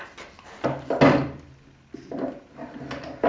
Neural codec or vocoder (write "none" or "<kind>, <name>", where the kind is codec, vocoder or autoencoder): none